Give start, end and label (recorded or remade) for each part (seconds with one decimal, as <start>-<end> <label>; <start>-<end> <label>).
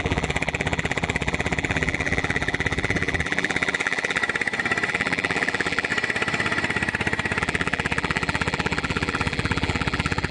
0.0-4.2 remade; 4.2-4.9 recorded; 4.9-5.9 remade; 5.9-7.4 recorded; 7.4-10.3 remade